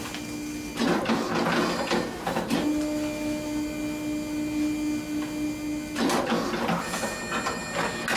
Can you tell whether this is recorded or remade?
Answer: recorded